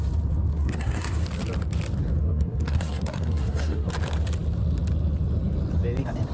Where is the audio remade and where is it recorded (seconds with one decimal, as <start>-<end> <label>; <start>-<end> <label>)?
0.0-0.5 recorded; 0.5-1.2 remade; 1.2-2.2 recorded; 2.2-3.9 remade; 3.9-6.3 recorded